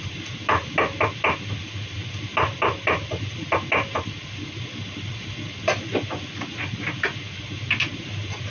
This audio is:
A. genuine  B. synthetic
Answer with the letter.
A